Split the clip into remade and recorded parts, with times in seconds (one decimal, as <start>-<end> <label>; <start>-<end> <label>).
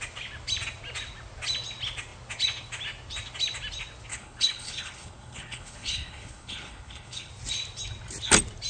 0.0-4.1 recorded; 4.1-7.3 remade; 7.3-8.7 recorded